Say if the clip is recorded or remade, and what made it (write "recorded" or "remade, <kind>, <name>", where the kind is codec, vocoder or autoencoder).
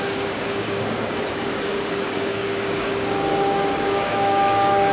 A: remade, codec, DAC